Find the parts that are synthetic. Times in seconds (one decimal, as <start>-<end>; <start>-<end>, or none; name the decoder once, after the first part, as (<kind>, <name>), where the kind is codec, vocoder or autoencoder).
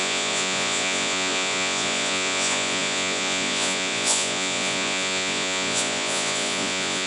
0.0-7.1 (vocoder, Vocos)